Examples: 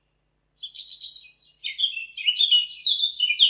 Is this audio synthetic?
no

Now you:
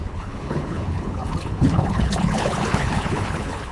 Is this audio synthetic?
yes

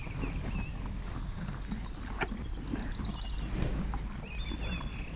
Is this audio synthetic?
no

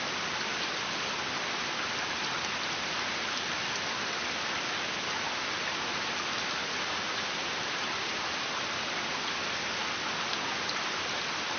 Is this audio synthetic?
no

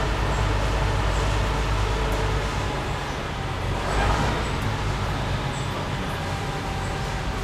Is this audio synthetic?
no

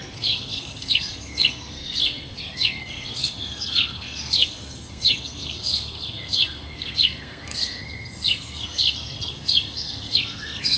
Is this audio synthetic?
yes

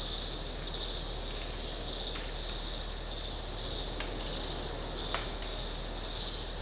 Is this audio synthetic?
no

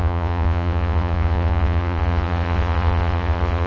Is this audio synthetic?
yes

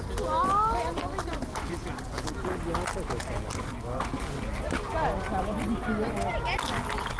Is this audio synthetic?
no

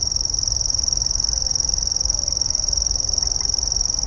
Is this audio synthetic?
yes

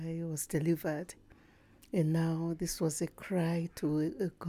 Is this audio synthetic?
no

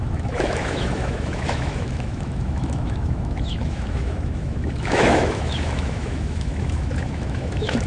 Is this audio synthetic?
yes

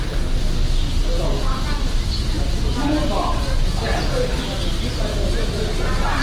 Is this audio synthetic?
no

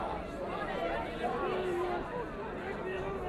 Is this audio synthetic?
no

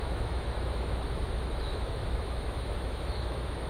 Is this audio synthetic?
yes